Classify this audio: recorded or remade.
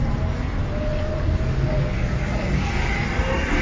recorded